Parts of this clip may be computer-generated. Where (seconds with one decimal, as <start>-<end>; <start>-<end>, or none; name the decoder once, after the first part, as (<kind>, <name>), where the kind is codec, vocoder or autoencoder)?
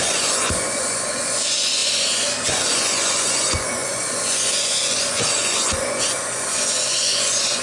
0.0-7.6 (vocoder, Vocos)